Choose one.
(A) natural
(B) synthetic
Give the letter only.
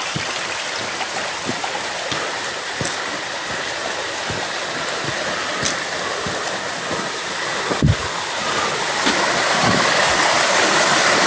A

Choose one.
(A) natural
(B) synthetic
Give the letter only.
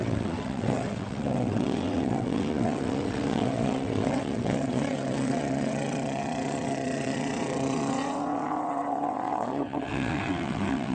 B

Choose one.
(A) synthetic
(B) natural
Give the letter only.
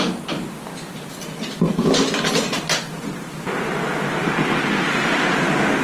B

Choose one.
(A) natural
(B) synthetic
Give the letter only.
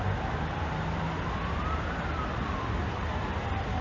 A